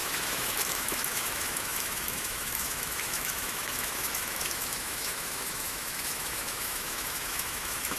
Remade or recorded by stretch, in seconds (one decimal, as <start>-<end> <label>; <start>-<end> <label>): 0.0-8.0 remade